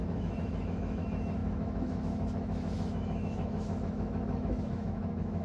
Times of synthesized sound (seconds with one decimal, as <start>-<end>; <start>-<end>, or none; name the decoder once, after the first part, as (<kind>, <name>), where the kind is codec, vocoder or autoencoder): 0.0-5.4 (autoencoder, DAC-VAE)